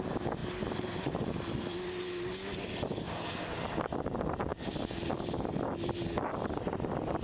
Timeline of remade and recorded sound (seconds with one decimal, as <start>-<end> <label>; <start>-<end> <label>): 0.0-7.2 recorded